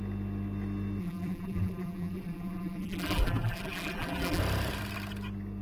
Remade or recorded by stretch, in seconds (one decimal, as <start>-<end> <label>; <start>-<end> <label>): 0.0-1.0 recorded; 1.0-4.4 remade; 4.4-5.6 recorded